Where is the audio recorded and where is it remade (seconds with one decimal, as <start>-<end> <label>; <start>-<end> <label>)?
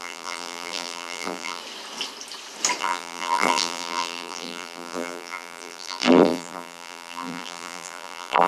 0.0-1.6 remade; 1.6-2.8 recorded; 2.8-8.5 remade